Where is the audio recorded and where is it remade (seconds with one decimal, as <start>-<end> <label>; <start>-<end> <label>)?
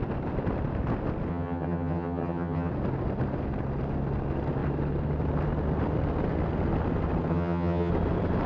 0.0-1.3 recorded; 1.3-2.7 remade; 2.7-7.3 recorded; 7.3-7.9 remade; 7.9-8.5 recorded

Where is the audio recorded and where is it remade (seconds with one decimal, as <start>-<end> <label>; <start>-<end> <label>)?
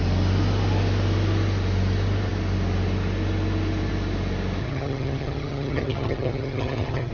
0.0-4.6 recorded; 4.6-7.1 remade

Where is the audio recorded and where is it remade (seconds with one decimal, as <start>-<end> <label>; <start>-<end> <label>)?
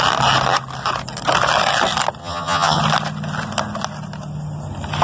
0.0-2.2 recorded; 2.2-2.8 remade; 2.8-5.0 recorded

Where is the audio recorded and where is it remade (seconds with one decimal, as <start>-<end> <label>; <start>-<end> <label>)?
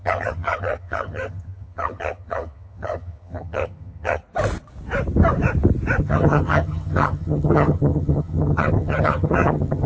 0.0-4.2 remade; 4.2-6.0 recorded; 6.0-9.9 remade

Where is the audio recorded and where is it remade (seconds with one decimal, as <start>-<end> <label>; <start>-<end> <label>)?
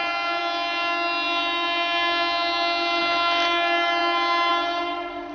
0.0-5.3 recorded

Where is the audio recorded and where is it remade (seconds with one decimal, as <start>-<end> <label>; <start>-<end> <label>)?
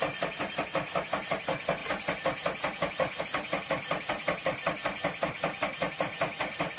0.0-6.8 recorded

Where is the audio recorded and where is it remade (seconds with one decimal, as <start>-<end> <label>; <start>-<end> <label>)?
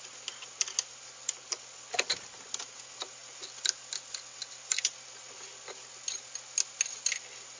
0.0-7.6 recorded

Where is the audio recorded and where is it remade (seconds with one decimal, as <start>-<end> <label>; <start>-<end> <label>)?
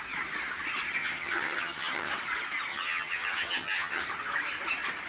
0.0-1.0 recorded; 1.0-2.1 remade; 2.1-2.7 recorded; 2.7-4.0 remade; 4.0-5.1 recorded